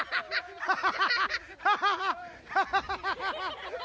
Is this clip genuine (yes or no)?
yes